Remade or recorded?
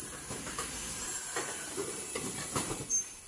remade